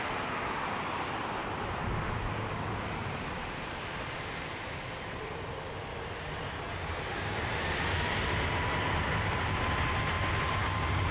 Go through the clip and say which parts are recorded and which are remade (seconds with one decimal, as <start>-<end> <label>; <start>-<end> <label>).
0.0-11.1 recorded